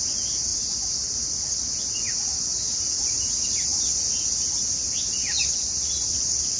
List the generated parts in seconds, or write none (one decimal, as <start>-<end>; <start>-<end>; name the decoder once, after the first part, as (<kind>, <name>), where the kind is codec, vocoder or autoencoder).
none